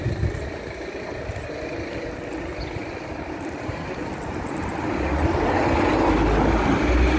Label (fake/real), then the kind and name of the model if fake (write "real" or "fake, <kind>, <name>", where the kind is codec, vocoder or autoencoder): real